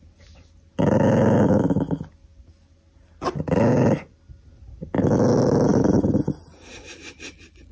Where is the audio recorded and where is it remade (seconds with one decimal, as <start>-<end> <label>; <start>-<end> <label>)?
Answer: 0.0-7.7 recorded